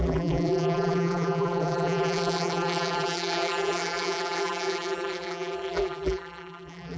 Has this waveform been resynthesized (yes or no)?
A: yes